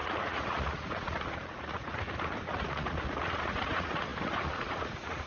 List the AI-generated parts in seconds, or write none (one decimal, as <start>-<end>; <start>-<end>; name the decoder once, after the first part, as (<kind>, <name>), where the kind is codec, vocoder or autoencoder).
0.0-5.3 (vocoder, Vocos)